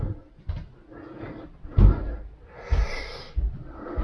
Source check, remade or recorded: recorded